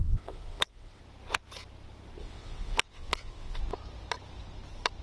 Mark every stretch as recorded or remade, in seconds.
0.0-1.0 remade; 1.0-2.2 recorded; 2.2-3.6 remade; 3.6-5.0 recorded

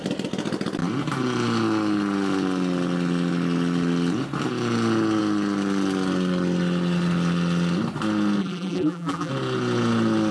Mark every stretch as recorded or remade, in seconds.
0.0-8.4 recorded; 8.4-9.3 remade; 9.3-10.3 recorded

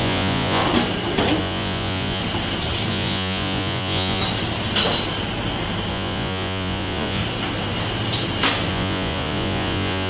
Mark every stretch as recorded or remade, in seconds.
0.0-0.6 remade; 0.6-1.4 recorded; 1.4-2.2 remade; 2.2-2.9 recorded; 2.9-4.2 remade; 4.2-5.9 recorded; 5.9-7.2 remade; 7.2-8.7 recorded; 8.7-10.1 remade

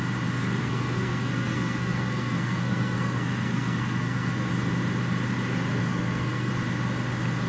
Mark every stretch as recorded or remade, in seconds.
0.0-0.6 recorded; 0.6-4.5 remade; 4.5-5.8 recorded; 5.8-6.5 remade; 6.5-7.5 recorded

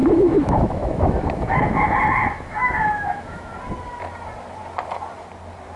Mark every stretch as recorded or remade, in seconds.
0.0-3.5 remade; 3.5-5.8 recorded

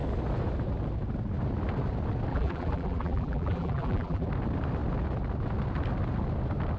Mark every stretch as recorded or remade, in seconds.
0.0-2.3 recorded; 2.3-4.3 remade; 4.3-6.8 recorded

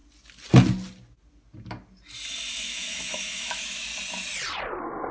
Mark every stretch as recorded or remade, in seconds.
0.0-2.5 recorded; 2.5-3.9 remade; 3.9-5.1 recorded

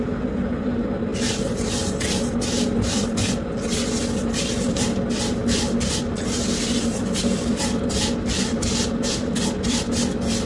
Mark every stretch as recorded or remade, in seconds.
0.0-10.5 remade